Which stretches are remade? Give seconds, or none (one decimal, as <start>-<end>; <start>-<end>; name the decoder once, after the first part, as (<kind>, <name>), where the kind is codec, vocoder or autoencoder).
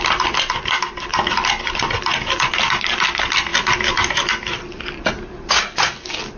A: none